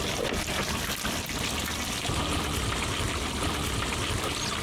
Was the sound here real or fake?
real